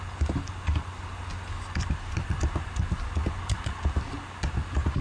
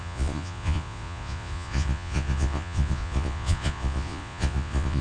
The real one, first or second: first